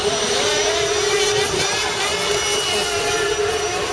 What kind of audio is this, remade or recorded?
recorded